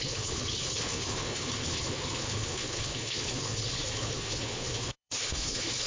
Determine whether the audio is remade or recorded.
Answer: remade